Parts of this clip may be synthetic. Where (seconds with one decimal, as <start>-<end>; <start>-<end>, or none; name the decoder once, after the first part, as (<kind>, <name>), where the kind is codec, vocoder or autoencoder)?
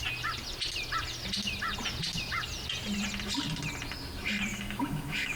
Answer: 4.5-5.4 (autoencoder, DAC-VAE)